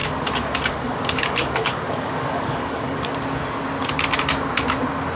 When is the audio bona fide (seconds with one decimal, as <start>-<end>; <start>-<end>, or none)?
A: 3.1-5.2